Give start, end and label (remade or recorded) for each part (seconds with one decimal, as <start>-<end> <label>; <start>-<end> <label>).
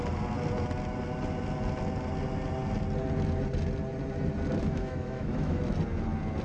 0.0-4.6 recorded; 4.6-5.6 remade; 5.6-6.4 recorded